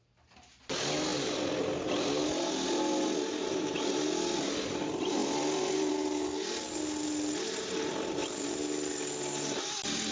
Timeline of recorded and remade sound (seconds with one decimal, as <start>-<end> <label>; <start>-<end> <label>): 0.0-5.2 recorded; 5.2-5.9 remade; 5.9-10.1 recorded